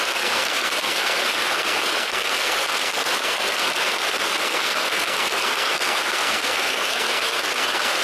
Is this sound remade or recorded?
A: remade